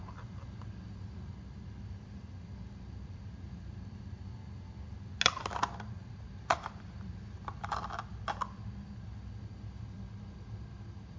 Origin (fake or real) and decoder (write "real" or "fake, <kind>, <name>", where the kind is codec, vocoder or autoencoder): real